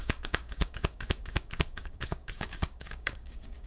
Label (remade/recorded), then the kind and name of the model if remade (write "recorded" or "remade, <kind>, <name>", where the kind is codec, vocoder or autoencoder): remade, codec, DAC